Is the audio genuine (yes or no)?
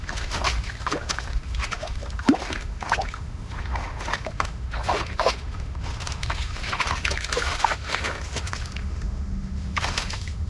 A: no